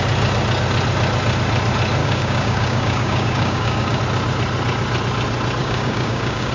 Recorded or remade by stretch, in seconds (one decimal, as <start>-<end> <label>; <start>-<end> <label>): 0.0-2.0 recorded; 2.0-4.0 remade; 4.0-5.6 recorded; 5.6-6.5 remade